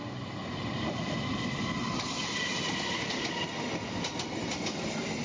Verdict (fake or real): real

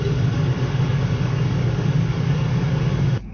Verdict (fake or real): fake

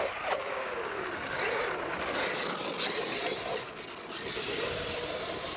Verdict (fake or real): real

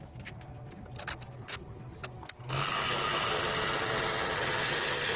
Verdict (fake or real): real